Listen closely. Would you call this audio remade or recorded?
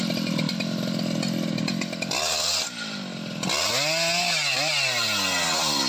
recorded